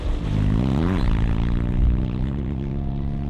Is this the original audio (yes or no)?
yes